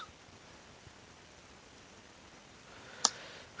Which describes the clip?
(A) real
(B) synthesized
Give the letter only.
B